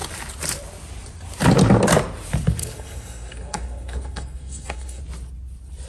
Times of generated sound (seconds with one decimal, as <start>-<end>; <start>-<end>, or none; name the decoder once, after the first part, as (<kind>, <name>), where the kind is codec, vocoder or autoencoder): 2.6-5.0 (codec, SNAC)